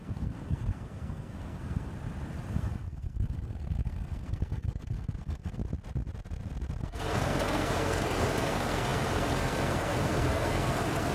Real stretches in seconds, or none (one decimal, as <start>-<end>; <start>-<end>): 1.9-2.5; 5.6-6.8